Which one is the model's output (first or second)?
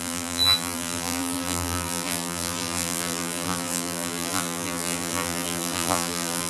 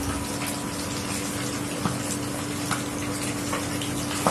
first